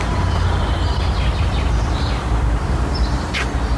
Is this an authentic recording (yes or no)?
no